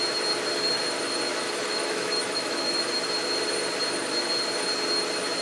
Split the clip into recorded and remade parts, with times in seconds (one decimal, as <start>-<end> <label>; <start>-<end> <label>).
0.0-1.3 recorded; 1.3-2.8 remade; 2.8-5.4 recorded